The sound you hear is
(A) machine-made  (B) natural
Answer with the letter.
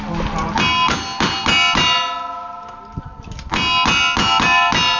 B